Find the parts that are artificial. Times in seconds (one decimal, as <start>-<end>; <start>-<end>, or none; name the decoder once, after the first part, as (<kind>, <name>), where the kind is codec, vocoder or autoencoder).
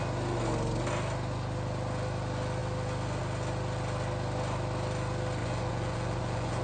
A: 5.4-6.6 (vocoder, Vocos)